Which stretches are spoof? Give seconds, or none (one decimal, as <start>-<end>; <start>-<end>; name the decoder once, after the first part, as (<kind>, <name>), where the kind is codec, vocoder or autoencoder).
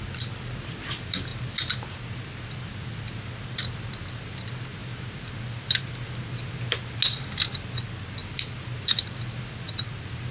none